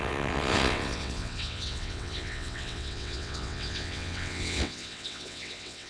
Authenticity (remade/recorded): remade